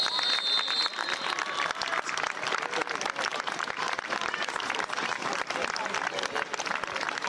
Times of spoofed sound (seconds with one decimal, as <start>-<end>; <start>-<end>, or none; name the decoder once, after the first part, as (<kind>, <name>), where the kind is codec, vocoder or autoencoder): 3.3-5.4 (vocoder, BigVGAN v2)